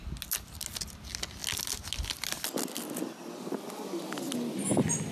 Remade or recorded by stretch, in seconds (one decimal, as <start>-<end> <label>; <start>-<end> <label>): 0.0-5.1 recorded